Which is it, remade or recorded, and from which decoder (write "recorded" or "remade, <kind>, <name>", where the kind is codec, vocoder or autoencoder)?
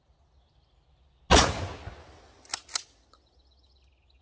recorded